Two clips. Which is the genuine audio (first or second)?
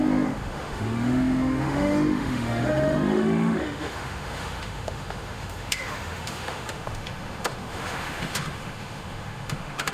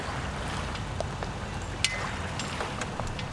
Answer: second